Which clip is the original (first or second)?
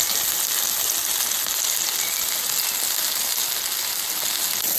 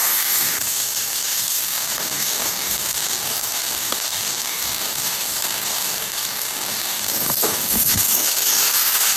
first